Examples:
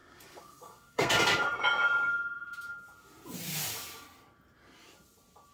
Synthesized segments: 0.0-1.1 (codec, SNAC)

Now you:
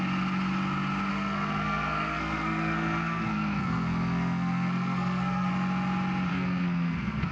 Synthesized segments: 1.1-5.5 (codec, SNAC); 6.3-7.3

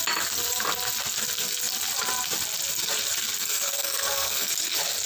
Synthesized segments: 3.4-4.5 (codec, SNAC)

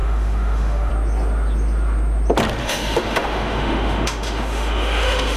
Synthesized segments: 0.0-0.9 (autoencoder, DAC-VAE); 2.6-5.4

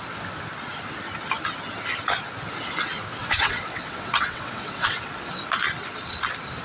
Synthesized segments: 3.2-5.3 (vocoder, WaveNeXt)

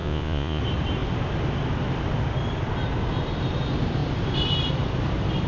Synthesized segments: 0.0-0.6 (vocoder, Vocos)